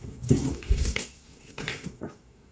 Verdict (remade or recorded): remade